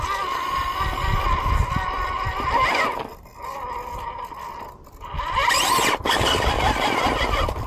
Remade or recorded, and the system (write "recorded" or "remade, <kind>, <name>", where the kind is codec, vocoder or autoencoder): recorded